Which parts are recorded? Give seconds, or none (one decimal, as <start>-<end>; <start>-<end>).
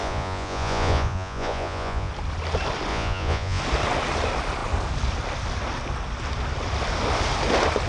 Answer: 2.1-2.9; 3.6-7.9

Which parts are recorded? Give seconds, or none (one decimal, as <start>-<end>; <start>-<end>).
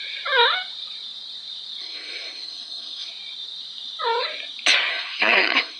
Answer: 0.0-1.8; 3.1-4.9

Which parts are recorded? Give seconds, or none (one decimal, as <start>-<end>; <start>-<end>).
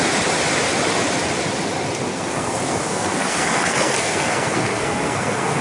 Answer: 0.0-2.1